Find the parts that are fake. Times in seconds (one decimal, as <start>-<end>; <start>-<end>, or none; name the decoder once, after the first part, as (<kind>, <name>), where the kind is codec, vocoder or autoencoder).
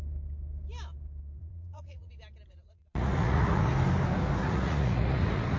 1.4-2.1 (vocoder, Vocos); 2.5-3.7; 4.4-5.6